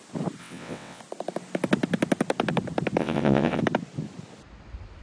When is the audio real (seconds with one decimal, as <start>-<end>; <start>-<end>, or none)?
0.0-0.4; 1.0-3.0; 3.6-5.0